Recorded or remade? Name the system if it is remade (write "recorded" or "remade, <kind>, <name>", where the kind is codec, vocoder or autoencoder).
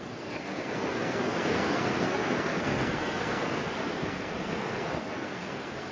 remade, codec, SNAC